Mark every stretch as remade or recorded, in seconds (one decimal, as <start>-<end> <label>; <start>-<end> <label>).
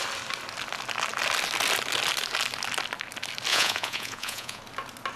0.0-3.5 recorded; 3.5-4.6 remade; 4.6-5.2 recorded